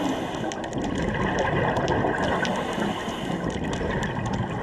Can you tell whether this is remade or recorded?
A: recorded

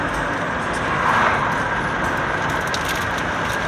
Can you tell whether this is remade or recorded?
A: recorded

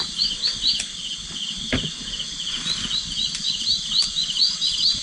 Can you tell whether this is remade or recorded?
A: recorded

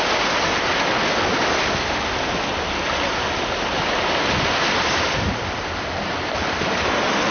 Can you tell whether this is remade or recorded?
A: recorded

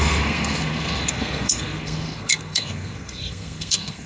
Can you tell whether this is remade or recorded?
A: remade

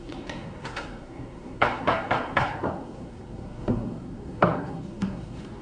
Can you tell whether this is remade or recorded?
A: remade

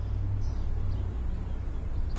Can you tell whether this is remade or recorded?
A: recorded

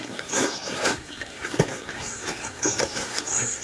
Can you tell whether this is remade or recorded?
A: remade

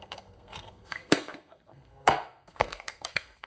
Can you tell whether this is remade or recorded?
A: remade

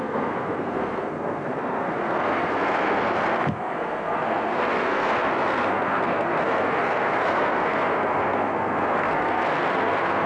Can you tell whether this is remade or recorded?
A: remade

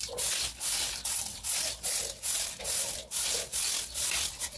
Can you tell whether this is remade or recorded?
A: recorded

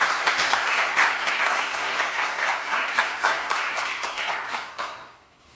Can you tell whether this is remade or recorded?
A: remade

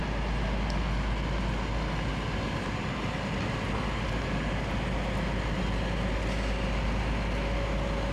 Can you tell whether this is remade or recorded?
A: recorded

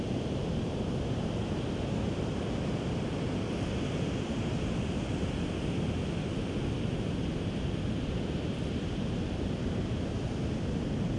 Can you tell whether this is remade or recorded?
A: recorded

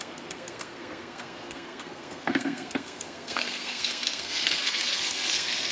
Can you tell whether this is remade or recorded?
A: remade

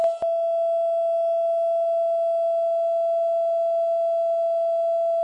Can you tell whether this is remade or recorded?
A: recorded